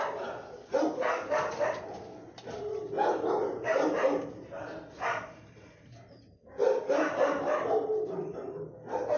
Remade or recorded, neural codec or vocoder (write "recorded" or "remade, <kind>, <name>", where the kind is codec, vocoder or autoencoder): recorded